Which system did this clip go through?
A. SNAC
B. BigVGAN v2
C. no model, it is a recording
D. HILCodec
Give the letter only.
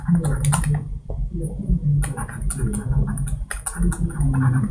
C